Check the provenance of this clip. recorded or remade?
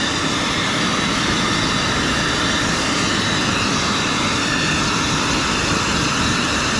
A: recorded